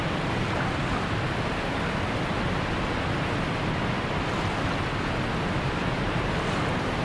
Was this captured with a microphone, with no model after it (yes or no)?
yes